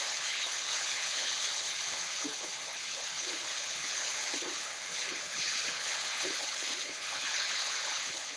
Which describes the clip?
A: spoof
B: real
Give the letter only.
A